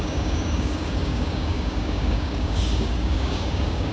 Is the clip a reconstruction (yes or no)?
yes